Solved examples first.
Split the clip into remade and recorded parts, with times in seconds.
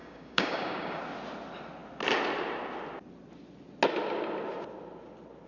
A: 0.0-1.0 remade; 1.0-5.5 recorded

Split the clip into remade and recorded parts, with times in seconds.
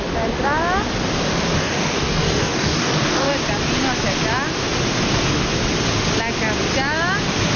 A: 0.0-1.6 recorded; 1.6-3.3 remade; 3.3-7.6 recorded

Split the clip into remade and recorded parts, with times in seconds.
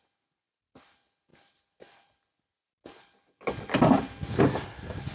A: 0.0-5.1 recorded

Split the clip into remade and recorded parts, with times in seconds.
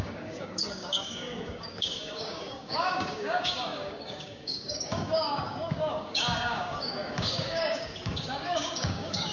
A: 0.0-9.3 remade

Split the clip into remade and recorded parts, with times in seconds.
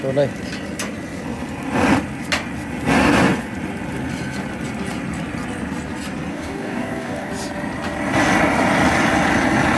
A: 0.0-6.3 recorded; 6.3-7.3 remade; 7.3-9.8 recorded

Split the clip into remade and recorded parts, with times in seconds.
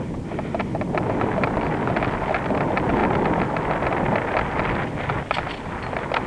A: 0.0-6.3 recorded